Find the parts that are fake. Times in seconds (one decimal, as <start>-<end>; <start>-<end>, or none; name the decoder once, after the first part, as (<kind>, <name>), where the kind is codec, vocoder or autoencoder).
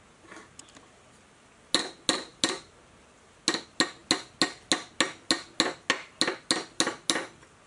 none